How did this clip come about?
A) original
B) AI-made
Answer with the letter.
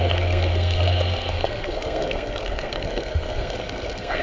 B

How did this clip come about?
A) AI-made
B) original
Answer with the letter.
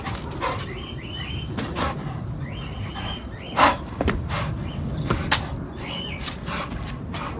A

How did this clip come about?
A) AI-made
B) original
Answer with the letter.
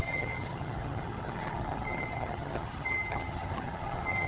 A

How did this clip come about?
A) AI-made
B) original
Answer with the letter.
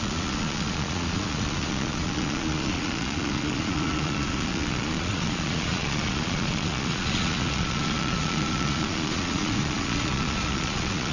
A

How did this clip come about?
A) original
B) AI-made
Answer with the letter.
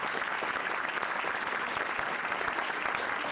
A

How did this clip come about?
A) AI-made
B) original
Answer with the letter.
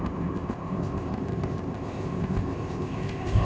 A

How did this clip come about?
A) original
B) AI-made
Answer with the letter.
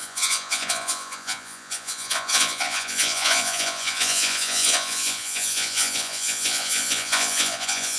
B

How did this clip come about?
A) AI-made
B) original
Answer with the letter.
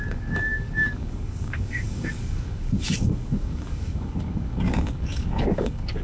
A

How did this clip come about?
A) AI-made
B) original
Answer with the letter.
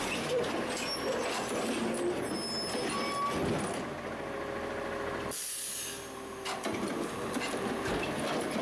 B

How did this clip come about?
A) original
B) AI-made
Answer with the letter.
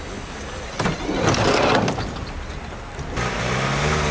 A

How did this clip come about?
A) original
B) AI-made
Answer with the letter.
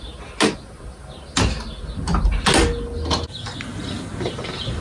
A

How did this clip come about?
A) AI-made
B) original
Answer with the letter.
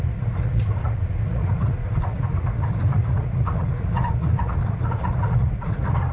A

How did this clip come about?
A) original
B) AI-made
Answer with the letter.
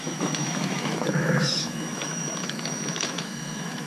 B